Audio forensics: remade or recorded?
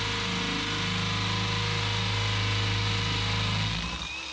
recorded